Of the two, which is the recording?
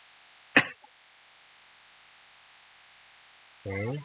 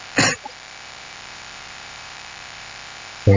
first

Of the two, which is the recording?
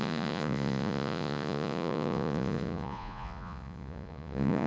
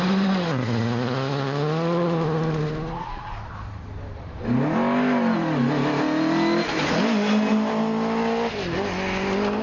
second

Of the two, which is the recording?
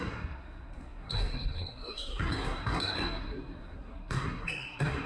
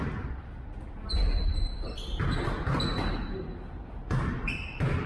second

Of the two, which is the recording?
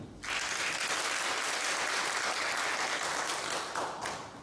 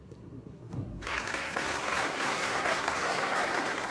first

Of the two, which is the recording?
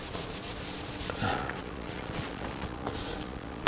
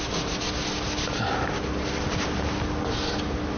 second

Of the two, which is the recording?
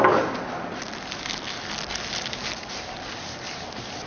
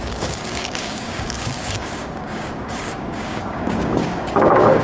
first